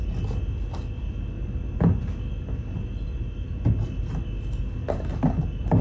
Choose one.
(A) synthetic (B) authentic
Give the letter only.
B